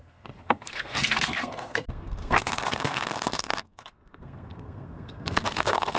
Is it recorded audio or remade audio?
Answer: remade